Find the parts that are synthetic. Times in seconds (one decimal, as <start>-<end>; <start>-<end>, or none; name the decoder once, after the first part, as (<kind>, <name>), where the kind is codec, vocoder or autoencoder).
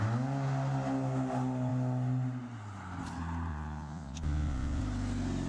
3.5-4.8 (vocoder, Vocos)